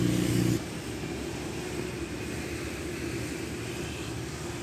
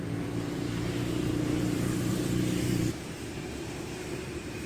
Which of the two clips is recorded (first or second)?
first